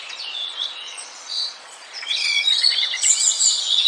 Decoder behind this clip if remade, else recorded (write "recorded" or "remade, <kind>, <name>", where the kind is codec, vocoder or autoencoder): remade, vocoder, Vocos